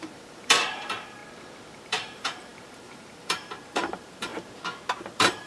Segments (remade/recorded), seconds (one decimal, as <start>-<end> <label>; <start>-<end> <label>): 0.0-1.2 remade; 1.2-1.8 recorded; 1.8-4.3 remade; 4.3-5.0 recorded; 5.0-5.5 remade